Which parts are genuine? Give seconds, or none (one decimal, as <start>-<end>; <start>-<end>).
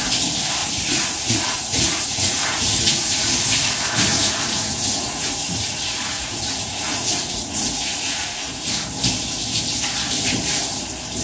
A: 0.0-0.6; 3.3-4.1; 8.7-11.2